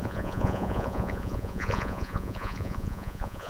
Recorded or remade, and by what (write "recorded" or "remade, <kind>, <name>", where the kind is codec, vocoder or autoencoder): remade, vocoder, Vocos